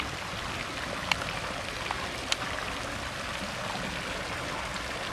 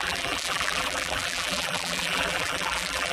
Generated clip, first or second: second